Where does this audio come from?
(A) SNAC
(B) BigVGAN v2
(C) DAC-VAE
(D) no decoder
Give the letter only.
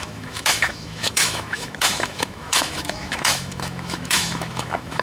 C